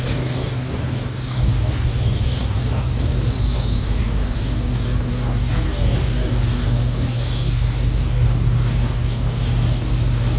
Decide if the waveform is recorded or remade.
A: remade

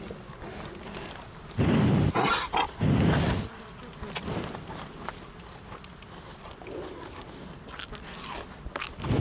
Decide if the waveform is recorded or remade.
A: recorded